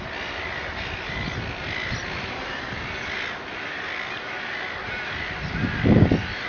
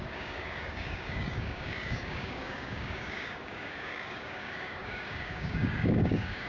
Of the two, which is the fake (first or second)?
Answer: second